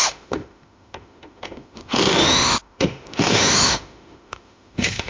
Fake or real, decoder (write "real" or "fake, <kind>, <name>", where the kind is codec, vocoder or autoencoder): fake, autoencoder, DAC-VAE